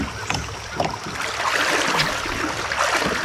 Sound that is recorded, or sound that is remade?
recorded